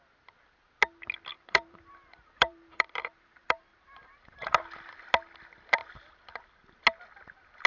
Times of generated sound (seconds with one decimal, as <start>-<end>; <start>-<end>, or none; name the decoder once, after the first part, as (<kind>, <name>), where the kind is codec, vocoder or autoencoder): 1.3-4.5 (vocoder, BigVGAN v2)